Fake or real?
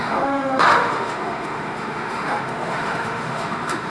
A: fake